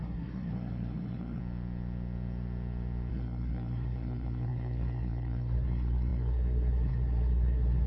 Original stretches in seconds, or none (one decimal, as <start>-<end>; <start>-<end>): 1.4-3.1